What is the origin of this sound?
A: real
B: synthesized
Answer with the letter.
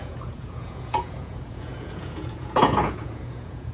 B